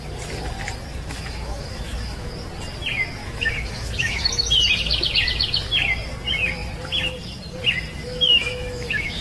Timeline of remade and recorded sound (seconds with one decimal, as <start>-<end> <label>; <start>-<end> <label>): 0.0-0.9 recorded; 0.9-2.3 remade; 2.3-3.2 recorded; 3.2-4.2 remade; 4.2-8.0 recorded; 8.0-9.2 remade